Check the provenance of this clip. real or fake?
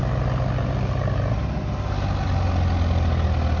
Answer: real